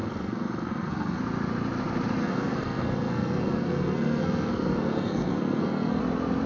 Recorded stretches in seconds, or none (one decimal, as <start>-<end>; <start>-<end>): 1.2-2.2; 6.0-6.5